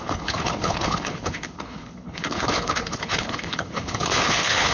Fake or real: fake